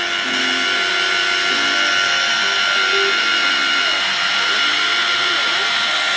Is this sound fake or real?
real